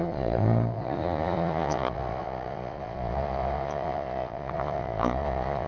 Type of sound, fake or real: fake